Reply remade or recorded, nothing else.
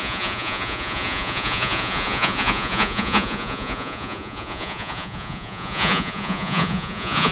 remade